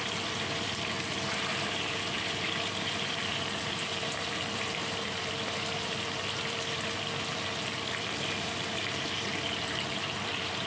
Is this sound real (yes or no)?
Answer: no